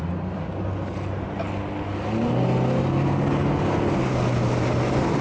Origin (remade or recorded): recorded